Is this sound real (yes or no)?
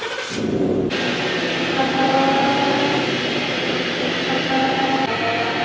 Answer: yes